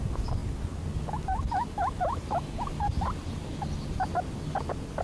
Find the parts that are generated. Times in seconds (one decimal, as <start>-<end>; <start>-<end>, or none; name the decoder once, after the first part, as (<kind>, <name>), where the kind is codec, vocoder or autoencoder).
3.5-4.6 (vocoder, BigVGAN v2)